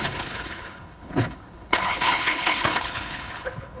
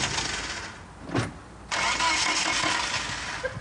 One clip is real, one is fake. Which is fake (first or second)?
first